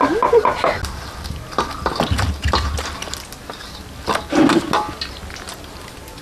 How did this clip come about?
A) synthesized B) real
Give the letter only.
B